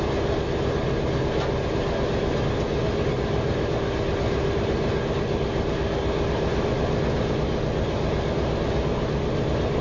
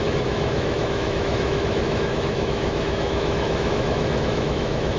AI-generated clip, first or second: second